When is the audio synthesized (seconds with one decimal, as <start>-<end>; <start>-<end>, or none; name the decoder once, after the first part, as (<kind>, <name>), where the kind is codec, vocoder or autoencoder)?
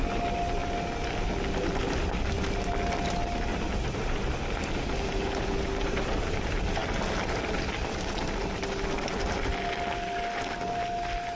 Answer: none